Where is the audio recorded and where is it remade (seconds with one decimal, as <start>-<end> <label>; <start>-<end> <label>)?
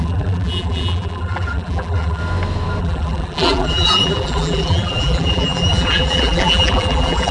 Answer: 0.0-2.2 remade; 2.2-2.8 recorded; 2.8-7.3 remade